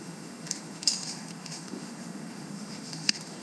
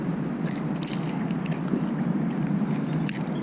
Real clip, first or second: second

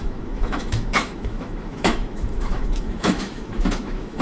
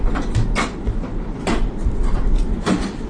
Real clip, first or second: second